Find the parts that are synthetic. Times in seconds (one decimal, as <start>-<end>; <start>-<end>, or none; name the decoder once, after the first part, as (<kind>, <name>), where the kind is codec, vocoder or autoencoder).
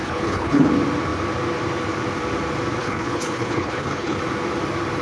0.0-0.7 (codec, HILCodec); 2.8-4.2